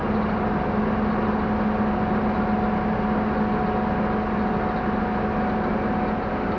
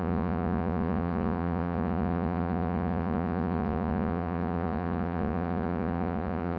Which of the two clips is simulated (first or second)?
second